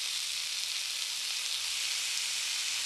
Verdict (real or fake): real